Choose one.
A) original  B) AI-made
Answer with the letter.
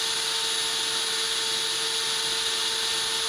A